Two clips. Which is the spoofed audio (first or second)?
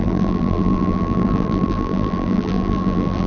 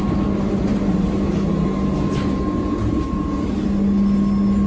first